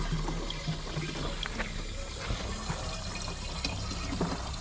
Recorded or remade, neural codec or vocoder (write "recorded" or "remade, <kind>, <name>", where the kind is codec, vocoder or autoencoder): recorded